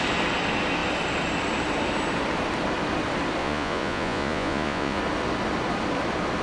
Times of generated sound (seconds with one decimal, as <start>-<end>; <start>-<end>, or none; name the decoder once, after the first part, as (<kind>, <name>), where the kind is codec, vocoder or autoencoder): 3.4-5.0 (vocoder, Vocos)